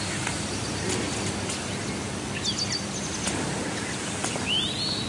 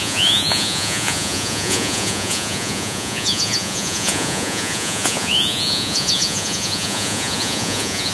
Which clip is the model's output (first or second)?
second